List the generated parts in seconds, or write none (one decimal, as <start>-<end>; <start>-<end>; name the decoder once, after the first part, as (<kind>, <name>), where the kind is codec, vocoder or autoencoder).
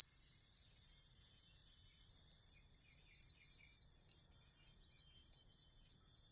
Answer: 1.2-1.6 (vocoder, Vocos); 4.4-6.3